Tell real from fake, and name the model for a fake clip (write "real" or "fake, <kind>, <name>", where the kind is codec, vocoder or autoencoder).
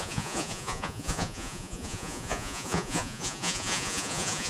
fake, vocoder, Vocos